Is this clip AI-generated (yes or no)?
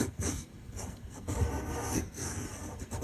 yes